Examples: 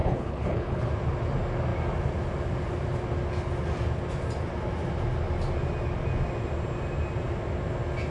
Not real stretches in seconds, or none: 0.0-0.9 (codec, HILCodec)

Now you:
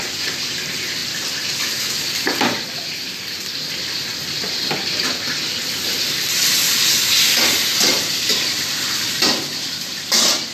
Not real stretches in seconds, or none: 1.0-2.0 (vocoder, BigVGAN v2); 4.1-4.6

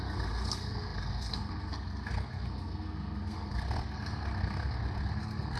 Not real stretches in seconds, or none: 0.0-5.6 (codec, SNAC)

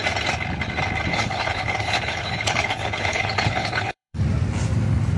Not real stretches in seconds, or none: 1.1-4.2 (codec, HILCodec)